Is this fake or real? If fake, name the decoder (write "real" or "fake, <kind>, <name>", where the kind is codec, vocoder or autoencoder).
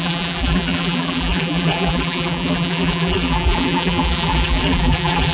fake, vocoder, BigVGAN v2